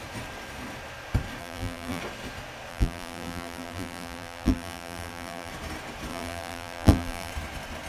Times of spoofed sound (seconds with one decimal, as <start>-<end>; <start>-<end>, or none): 1.4-2.0; 2.7-5.5; 6.1-7.3